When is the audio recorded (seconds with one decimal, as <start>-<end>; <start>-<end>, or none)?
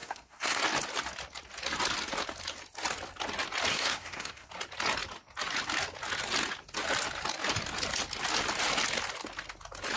0.6-3.7; 4.5-10.0